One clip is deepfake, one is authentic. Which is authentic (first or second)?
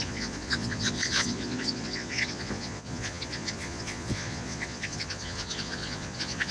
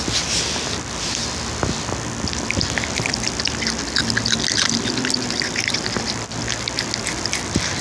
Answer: second